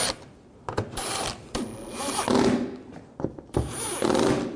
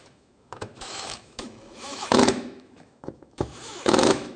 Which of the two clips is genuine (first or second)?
first